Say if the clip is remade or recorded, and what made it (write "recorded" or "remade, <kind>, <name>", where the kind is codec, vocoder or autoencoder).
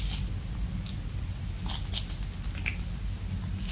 recorded